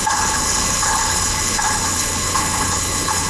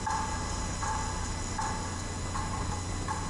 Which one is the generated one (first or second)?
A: first